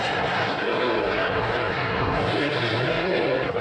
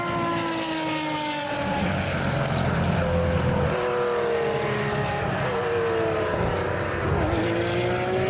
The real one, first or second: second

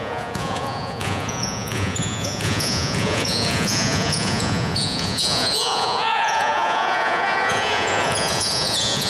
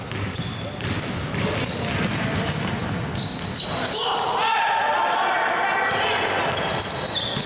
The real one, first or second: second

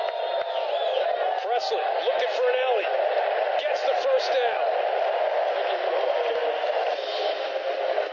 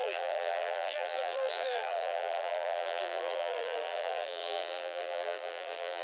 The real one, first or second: first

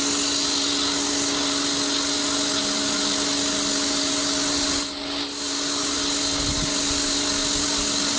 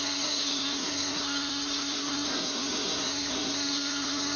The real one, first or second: first